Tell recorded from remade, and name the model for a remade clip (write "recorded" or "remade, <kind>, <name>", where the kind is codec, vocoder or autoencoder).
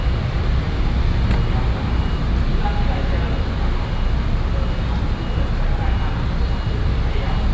recorded